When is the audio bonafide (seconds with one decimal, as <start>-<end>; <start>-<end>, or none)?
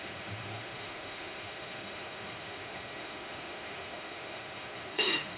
none